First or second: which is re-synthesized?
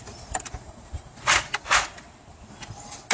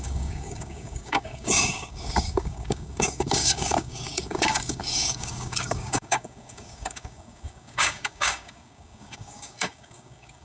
second